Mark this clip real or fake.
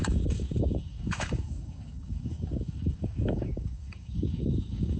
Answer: fake